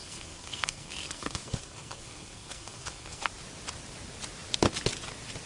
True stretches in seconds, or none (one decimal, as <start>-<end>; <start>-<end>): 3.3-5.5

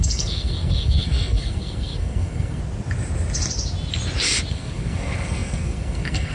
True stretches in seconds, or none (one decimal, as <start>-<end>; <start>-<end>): 2.6-4.5

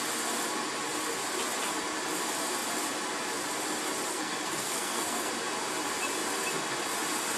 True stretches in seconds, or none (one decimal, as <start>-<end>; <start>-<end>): 0.0-4.1; 5.3-7.4

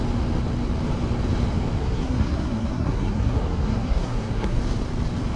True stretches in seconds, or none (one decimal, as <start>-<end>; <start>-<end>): 0.0-1.8; 4.6-5.4

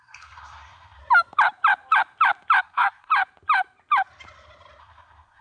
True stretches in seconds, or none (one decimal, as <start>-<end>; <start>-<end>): 1.0-2.6; 3.1-4.8

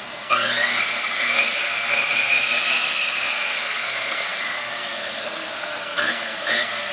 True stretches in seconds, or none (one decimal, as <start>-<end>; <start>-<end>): none

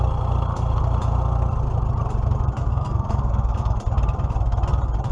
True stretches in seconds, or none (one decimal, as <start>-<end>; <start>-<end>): 0.0-2.7; 3.8-5.1